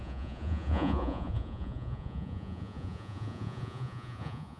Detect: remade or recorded remade